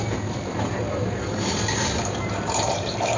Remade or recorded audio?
recorded